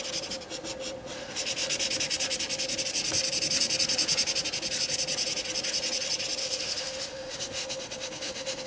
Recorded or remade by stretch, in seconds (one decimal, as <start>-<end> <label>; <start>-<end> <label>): 0.0-6.4 recorded; 6.4-8.7 remade